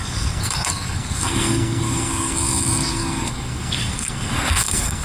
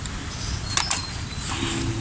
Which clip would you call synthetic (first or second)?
first